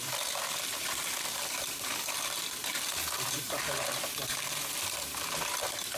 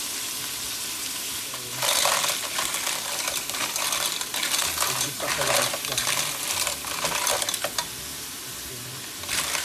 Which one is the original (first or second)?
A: second